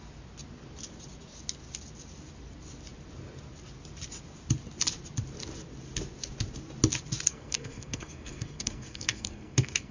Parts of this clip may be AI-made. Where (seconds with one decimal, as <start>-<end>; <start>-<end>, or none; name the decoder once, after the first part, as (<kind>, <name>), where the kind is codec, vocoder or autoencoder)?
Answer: 7.3-9.9 (codec, SNAC)